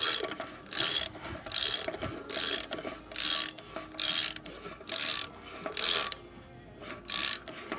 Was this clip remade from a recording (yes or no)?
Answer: no